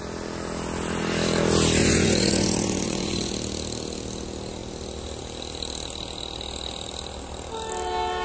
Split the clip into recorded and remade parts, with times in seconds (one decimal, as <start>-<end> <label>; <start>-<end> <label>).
0.0-1.8 recorded; 1.8-3.3 remade; 3.3-8.2 recorded